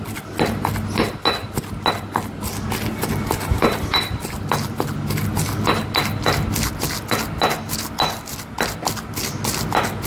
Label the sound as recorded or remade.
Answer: recorded